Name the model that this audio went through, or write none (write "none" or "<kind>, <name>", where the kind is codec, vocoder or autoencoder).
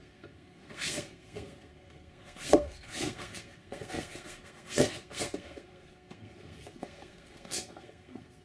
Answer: codec, SNAC